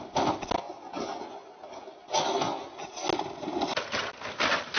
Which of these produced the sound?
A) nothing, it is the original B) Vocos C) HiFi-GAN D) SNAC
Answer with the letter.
A